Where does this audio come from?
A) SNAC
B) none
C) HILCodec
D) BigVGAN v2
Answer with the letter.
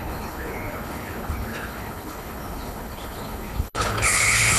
C